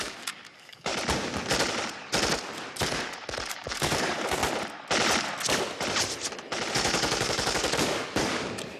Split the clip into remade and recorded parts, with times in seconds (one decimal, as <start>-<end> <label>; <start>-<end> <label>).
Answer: 0.0-0.9 remade; 0.9-3.5 recorded; 3.5-4.4 remade; 4.4-6.7 recorded; 6.7-8.8 remade